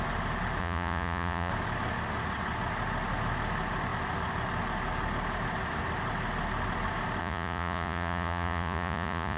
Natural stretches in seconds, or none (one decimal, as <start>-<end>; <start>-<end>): 0.0-0.6; 1.5-7.2

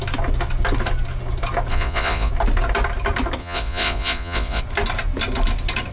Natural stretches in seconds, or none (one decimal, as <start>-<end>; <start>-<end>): 0.0-1.7; 2.3-3.4; 4.6-5.9

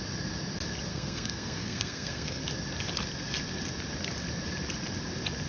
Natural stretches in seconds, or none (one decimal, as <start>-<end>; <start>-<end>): 0.0-0.9; 2.4-5.5